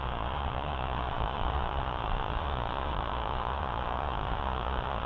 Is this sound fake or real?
fake